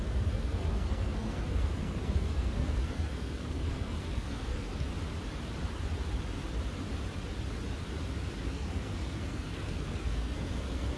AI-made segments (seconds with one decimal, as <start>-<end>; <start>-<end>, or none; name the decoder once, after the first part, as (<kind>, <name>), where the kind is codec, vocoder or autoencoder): 0.0-4.9 (codec, SNAC); 8.5-11.0